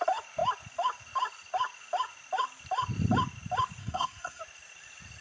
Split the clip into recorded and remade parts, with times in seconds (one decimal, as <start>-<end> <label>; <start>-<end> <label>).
0.0-3.8 recorded; 3.8-4.4 remade; 4.4-5.2 recorded